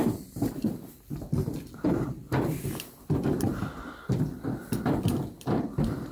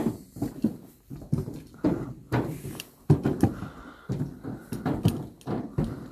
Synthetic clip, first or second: first